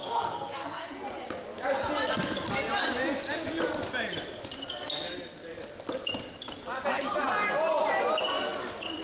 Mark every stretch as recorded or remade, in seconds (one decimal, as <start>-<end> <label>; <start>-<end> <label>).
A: 0.0-0.9 remade; 0.9-9.0 recorded